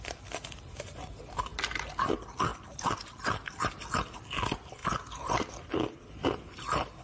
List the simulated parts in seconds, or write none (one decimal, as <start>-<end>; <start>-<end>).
2.5-3.4